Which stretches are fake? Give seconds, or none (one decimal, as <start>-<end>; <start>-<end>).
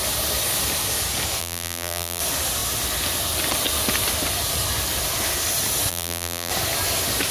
1.4-2.2; 5.9-6.5